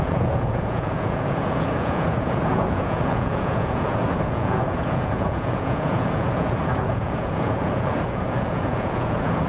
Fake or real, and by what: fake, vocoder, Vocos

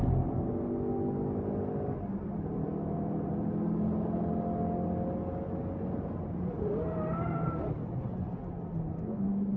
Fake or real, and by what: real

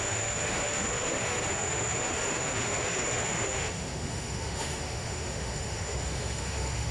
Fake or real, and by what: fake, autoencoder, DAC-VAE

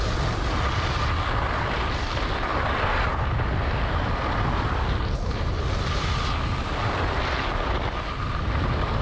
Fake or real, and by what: real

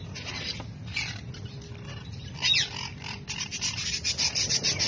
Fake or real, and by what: real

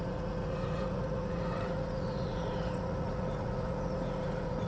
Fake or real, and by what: fake, vocoder, Vocos